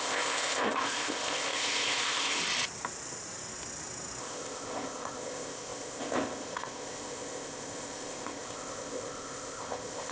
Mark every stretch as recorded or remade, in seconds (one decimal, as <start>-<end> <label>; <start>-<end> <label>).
0.0-2.4 remade; 2.4-4.2 recorded; 4.2-10.1 remade